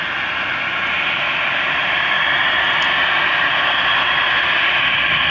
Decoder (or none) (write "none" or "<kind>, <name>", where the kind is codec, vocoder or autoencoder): none